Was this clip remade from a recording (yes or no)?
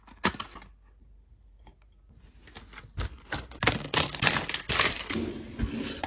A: no